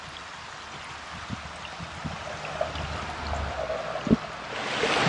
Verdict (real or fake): real